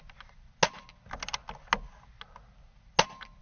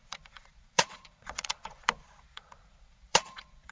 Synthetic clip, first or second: second